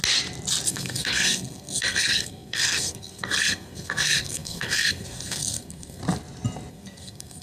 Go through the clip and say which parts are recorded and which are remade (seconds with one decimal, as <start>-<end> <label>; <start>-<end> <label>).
0.0-0.7 recorded; 0.7-6.0 remade; 6.0-6.7 recorded; 6.7-7.4 remade